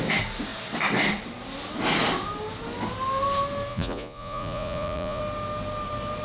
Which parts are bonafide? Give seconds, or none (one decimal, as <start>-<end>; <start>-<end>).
0.0-3.7; 5.2-6.2